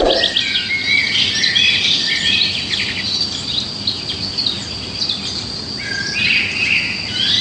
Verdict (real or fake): real